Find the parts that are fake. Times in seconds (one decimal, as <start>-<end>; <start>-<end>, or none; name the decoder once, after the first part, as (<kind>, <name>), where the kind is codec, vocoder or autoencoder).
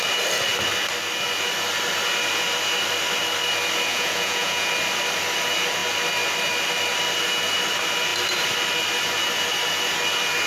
3.9-4.7 (vocoder, Vocos)